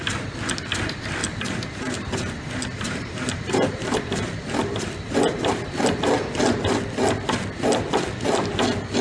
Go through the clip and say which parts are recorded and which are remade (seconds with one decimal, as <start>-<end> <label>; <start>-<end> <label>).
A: 0.0-1.2 recorded; 1.2-4.6 remade; 4.6-9.0 recorded